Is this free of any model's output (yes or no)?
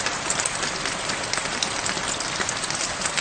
yes